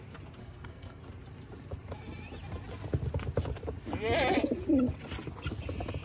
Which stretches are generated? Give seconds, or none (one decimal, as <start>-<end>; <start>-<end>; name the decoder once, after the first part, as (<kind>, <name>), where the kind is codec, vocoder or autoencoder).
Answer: 0.4-1.0 (codec, SNAC)